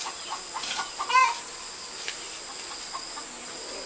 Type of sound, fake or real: real